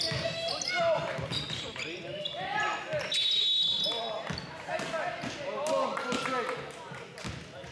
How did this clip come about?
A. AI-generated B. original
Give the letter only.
B